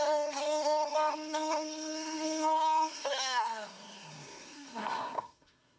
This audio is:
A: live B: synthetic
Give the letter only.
B